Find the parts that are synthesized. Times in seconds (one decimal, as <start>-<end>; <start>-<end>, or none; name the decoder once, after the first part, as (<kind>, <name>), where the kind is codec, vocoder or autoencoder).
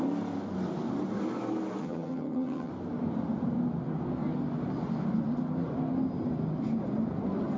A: 1.8-2.7 (vocoder, HiFi-GAN)